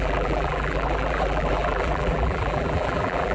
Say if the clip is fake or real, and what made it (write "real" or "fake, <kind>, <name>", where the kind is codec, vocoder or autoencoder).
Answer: fake, vocoder, BigVGAN v2